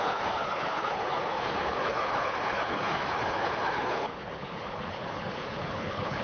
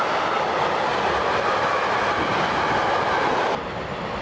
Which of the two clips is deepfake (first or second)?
first